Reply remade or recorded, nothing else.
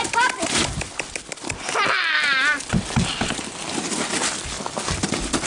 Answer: remade